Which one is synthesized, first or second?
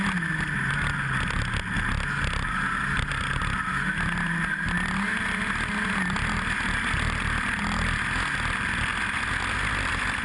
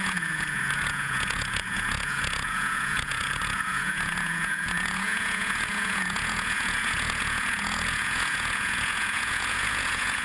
second